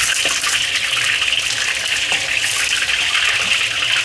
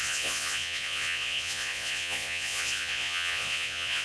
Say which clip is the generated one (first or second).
second